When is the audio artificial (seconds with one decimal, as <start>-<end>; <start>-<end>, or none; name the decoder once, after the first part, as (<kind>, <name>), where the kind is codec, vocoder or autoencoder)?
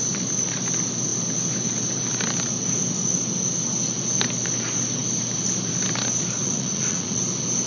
6.4-7.2 (vocoder, Vocos)